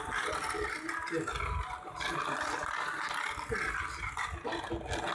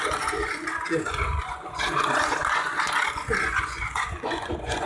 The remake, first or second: second